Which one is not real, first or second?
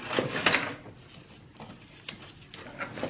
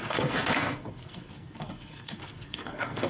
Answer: second